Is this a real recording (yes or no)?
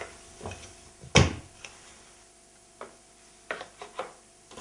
yes